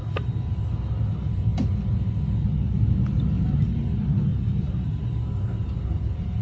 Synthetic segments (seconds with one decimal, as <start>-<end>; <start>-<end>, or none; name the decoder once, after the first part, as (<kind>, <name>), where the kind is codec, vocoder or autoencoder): 4.3-6.4 (vocoder, BigVGAN v2)